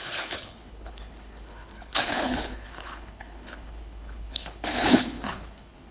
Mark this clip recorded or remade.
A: remade